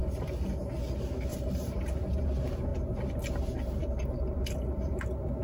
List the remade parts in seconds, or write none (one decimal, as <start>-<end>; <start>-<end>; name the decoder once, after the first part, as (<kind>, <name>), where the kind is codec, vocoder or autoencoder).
0.0-0.7 (vocoder, BigVGAN v2); 1.3-2.2